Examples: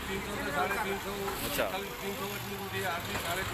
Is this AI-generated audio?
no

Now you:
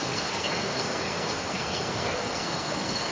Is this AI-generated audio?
yes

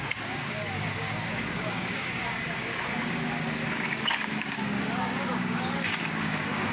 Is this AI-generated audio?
yes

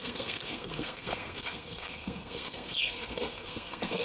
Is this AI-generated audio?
yes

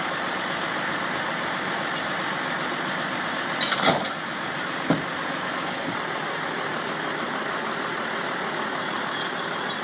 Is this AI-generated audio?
no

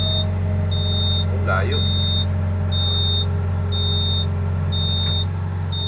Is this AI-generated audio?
no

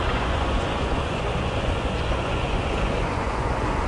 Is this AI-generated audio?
yes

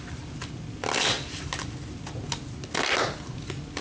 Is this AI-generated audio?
no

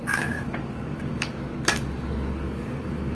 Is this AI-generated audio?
yes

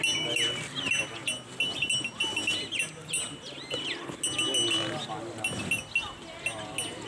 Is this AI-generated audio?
no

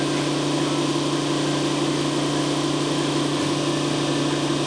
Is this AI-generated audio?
no